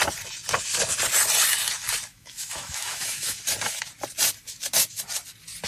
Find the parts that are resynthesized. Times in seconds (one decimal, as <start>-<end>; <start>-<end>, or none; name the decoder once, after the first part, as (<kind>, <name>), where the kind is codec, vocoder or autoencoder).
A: 2.1-3.4 (autoencoder, DAC-VAE)